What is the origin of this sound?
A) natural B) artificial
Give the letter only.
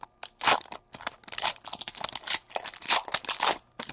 A